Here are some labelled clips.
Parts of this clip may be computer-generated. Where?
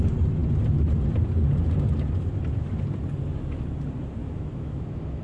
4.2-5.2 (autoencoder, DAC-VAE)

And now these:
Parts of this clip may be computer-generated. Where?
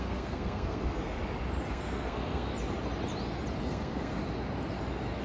0.0-1.2 (codec, SNAC); 1.7-2.5; 3.6-4.2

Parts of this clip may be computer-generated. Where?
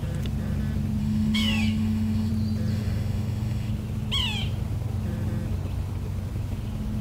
1.0-2.3 (autoencoder, DAC-VAE); 2.7-3.7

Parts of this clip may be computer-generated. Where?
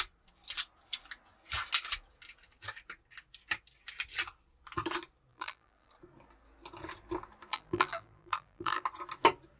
5.3-5.9 (vocoder, BigVGAN v2); 7.5-8.8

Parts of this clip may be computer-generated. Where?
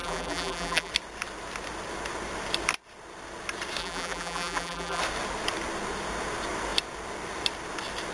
0.0-0.9 (vocoder, BigVGAN v2); 3.8-5.0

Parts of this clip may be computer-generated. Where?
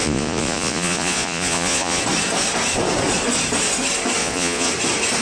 0.0-2.0 (vocoder, Vocos); 4.2-4.7